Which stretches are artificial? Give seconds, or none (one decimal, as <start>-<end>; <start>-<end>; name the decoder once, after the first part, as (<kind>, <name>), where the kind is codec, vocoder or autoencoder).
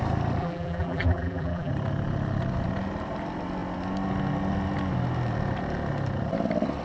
0.4-1.7 (vocoder, BigVGAN v2)